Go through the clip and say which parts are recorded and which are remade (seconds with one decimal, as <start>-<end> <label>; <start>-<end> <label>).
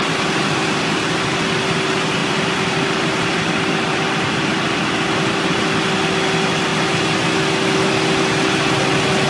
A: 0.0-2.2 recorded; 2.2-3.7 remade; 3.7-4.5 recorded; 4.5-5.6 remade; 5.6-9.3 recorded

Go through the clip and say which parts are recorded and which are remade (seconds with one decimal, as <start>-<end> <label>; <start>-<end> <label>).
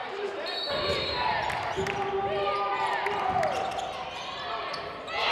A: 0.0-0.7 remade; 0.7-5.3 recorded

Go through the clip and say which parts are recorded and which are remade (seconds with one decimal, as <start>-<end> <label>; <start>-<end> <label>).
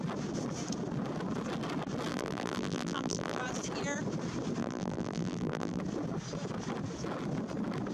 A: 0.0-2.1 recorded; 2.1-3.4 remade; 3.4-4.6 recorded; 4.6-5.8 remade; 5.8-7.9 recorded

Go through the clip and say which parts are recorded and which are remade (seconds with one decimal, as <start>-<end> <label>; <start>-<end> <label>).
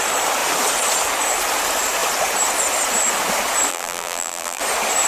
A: 0.0-3.7 recorded; 3.7-4.6 remade; 4.6-5.1 recorded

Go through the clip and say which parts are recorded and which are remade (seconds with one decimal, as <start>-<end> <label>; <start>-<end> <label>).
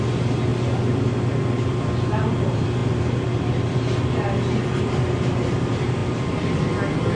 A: 0.0-6.0 remade; 6.0-6.6 recorded; 6.6-7.2 remade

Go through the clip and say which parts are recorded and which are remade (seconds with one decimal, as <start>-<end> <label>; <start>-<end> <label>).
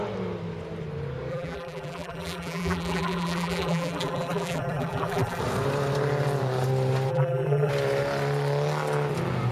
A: 0.0-1.3 recorded; 1.3-5.4 remade; 5.4-7.1 recorded; 7.1-7.7 remade; 7.7-9.5 recorded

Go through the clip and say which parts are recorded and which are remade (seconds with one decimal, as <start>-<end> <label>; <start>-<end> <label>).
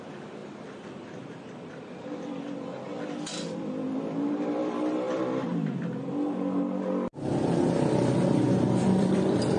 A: 0.0-5.5 remade; 5.5-8.8 recorded; 8.8-9.6 remade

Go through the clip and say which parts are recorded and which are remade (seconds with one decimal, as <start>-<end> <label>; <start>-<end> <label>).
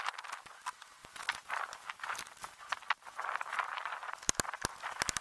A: 0.0-1.0 recorded; 1.0-4.1 remade; 4.1-5.2 recorded